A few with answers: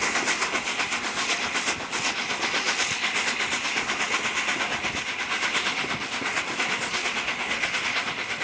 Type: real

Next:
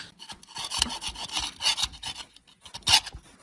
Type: real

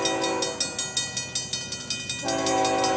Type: real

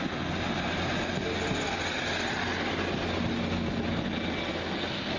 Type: real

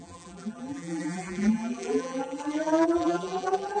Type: fake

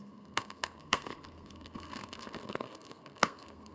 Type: fake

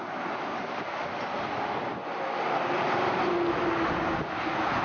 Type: real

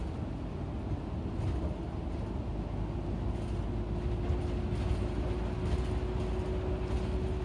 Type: real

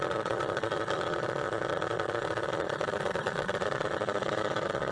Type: fake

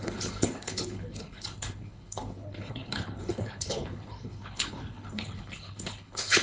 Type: fake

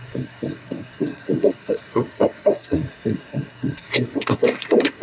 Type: fake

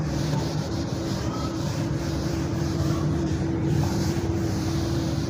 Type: fake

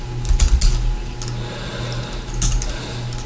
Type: real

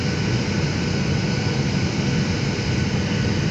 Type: real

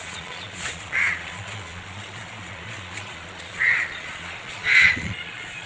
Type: fake